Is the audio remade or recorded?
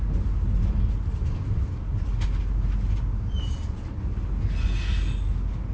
recorded